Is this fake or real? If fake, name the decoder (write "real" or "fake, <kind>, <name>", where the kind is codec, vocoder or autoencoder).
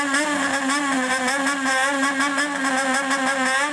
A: real